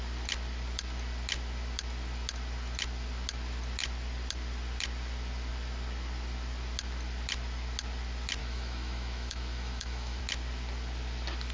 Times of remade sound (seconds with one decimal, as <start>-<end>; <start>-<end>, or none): 8.4-10.2